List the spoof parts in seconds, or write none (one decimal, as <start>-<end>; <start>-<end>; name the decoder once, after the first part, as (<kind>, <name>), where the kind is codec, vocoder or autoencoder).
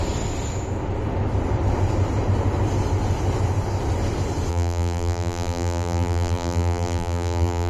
4.5-7.7 (vocoder, BigVGAN v2)